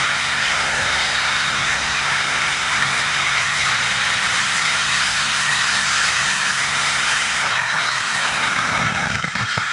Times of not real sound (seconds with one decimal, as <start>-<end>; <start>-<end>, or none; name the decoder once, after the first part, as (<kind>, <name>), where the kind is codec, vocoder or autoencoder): 0.0-3.7 (codec, SNAC); 4.4-9.7